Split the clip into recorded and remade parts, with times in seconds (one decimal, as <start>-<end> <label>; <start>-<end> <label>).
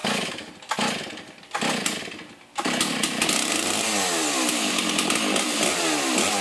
0.0-0.5 remade; 0.5-6.4 recorded